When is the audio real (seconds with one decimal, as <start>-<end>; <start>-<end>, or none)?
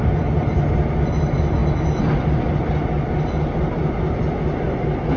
0.0-5.2